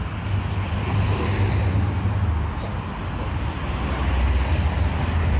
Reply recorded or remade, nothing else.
recorded